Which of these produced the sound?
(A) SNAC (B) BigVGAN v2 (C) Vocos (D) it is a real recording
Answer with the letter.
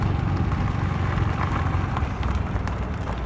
B